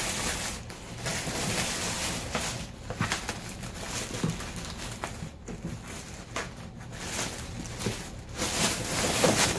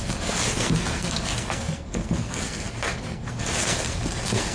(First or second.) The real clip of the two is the first